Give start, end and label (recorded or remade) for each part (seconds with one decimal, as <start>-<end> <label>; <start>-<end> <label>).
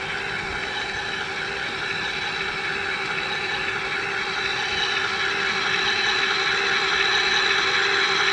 0.0-8.3 recorded